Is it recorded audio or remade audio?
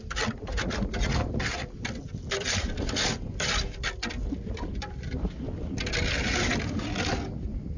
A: recorded